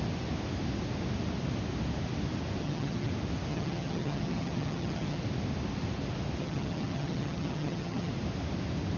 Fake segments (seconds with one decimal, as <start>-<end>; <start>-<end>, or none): 2.6-3.1; 3.5-5.2; 6.4-8.1